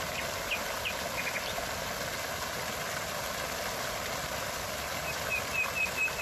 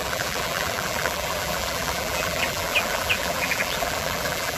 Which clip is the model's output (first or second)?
second